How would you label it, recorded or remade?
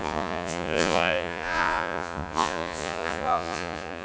remade